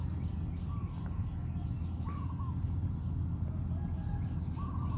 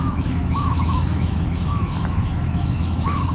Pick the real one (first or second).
first